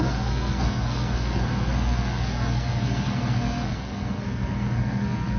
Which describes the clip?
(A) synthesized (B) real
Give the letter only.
A